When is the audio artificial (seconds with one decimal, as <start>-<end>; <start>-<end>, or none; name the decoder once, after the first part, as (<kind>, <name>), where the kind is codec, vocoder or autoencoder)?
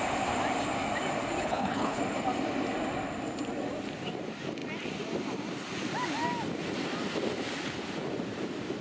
1.4-2.0 (codec, HILCodec)